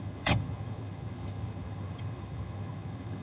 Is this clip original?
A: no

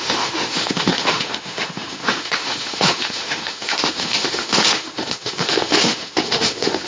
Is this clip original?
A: no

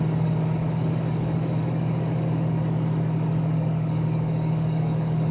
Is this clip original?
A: no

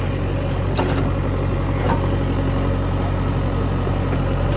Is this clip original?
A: yes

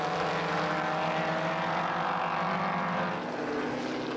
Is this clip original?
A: yes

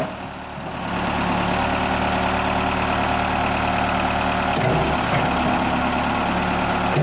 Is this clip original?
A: yes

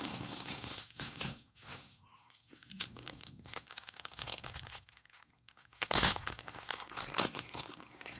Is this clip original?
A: no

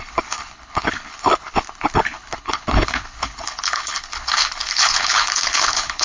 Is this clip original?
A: no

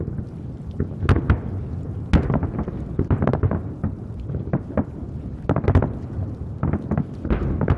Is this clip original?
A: yes